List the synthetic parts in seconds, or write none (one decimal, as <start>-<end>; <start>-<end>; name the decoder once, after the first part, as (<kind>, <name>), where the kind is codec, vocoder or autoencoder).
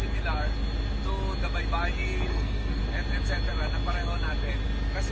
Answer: 2.3-2.8 (codec, SNAC)